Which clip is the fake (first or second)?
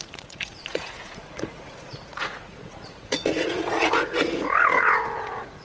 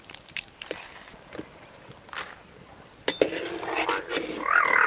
first